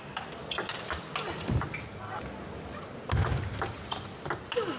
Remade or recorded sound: recorded